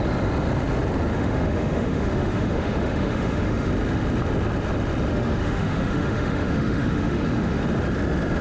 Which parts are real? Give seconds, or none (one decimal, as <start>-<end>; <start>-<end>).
0.0-1.1; 3.7-5.1; 7.6-8.4